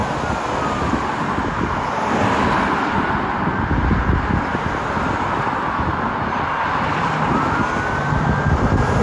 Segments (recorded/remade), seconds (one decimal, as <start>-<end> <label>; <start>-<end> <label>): 0.0-9.0 recorded